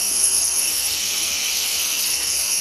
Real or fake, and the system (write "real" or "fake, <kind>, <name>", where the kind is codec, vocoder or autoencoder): fake, codec, SNAC